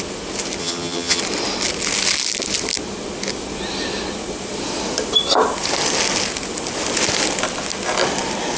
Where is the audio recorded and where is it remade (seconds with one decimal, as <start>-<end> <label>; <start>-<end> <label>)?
0.0-0.6 recorded; 0.6-1.2 remade; 1.2-8.6 recorded

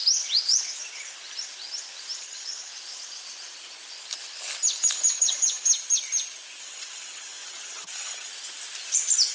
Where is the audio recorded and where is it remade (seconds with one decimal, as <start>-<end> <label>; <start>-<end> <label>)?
0.0-2.2 recorded; 2.2-2.7 remade; 2.7-5.1 recorded; 5.1-5.7 remade; 5.7-6.6 recorded; 6.6-8.3 remade; 8.3-9.3 recorded

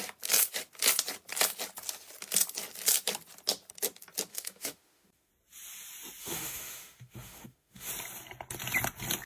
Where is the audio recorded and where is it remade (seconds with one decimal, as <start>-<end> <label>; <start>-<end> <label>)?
0.0-4.3 recorded; 4.3-5.3 remade; 5.3-6.2 recorded; 6.2-7.9 remade; 7.9-9.3 recorded

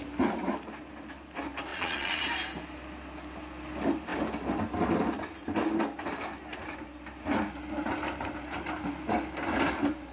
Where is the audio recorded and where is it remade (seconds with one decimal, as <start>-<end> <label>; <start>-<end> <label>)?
0.0-1.7 recorded; 1.7-2.2 remade; 2.2-10.1 recorded